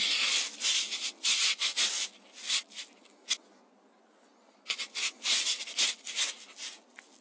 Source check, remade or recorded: recorded